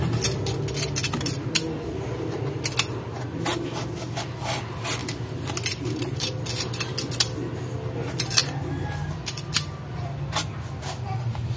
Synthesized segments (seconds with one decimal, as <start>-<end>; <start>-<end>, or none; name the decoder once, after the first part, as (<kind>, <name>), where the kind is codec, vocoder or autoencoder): none